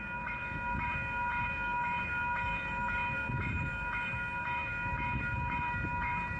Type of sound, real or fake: fake